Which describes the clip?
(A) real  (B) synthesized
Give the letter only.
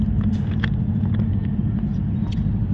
B